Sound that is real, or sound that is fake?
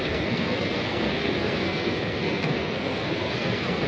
fake